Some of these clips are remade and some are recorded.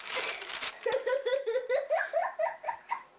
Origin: remade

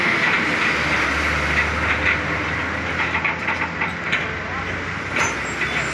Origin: recorded